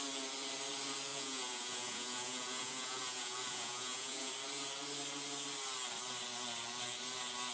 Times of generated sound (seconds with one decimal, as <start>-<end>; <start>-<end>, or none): 1.1-4.3